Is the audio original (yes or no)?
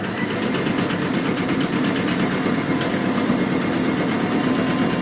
yes